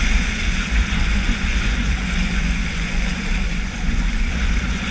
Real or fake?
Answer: fake